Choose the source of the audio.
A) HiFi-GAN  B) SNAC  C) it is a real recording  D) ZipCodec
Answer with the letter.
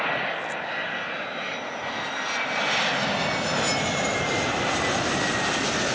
C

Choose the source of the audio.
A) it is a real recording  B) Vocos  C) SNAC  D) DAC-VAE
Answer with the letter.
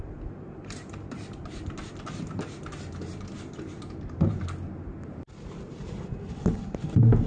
A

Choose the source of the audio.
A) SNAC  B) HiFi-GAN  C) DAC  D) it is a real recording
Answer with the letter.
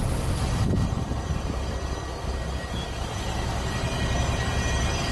D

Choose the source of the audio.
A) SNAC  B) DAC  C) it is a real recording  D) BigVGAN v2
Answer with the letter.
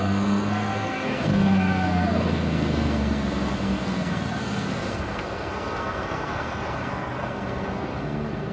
A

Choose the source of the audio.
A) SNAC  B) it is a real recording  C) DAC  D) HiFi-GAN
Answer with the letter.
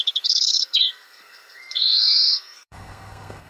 A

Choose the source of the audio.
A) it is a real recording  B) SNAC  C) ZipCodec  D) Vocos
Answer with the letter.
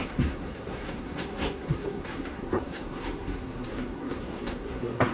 B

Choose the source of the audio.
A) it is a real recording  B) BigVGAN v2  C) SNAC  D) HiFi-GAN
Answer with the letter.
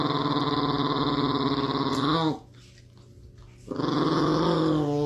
A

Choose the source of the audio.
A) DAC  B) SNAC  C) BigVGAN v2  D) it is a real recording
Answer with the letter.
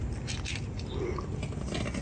D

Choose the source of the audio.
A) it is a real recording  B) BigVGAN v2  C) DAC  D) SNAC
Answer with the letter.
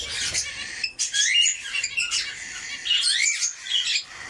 A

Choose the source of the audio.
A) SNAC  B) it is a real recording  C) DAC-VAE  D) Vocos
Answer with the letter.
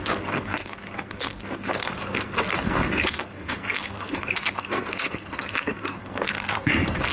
A